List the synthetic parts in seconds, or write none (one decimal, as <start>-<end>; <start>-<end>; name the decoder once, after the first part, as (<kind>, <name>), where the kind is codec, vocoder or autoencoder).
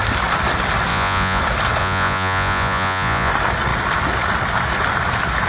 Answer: 0.9-1.4 (vocoder, Vocos); 1.8-3.3